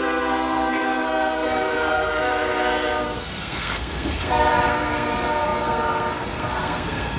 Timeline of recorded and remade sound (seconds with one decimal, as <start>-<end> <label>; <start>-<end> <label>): 0.0-7.2 remade